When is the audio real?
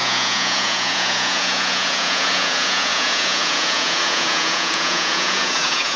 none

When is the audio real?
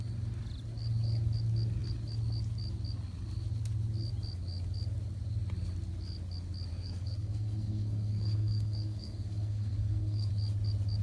0.0-6.7; 10.3-11.0